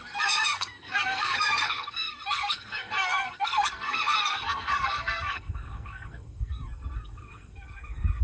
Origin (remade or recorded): remade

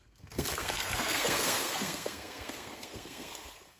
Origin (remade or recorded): remade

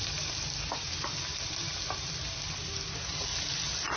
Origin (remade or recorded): recorded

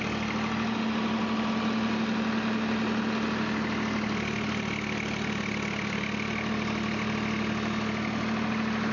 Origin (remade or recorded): recorded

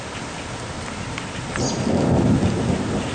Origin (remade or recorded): recorded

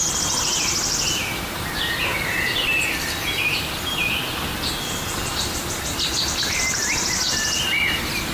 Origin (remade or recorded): recorded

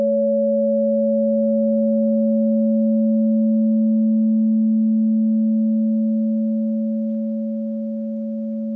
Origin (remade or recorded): recorded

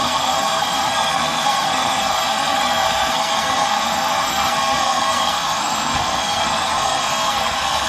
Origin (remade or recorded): remade